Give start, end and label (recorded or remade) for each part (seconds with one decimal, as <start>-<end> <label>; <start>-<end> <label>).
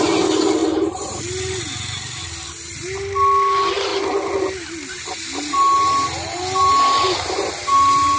0.0-0.6 recorded; 0.6-1.2 remade; 1.2-8.2 recorded